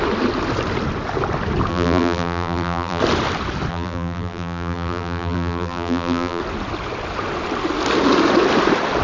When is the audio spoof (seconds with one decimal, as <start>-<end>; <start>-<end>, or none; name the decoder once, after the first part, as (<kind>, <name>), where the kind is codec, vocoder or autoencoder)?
1.7-3.0 (vocoder, BigVGAN v2); 3.7-6.4